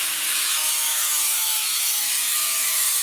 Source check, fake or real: fake